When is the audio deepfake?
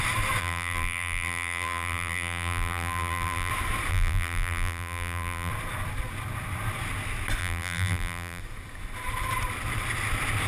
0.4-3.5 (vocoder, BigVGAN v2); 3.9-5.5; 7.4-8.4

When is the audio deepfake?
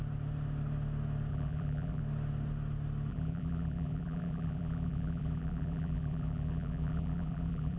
1.3-2.0 (vocoder, BigVGAN v2); 3.1-7.8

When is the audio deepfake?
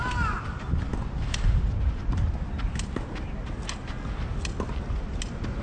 none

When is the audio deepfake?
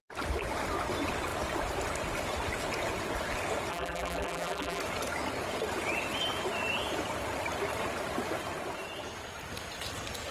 3.7-4.8 (vocoder, BigVGAN v2)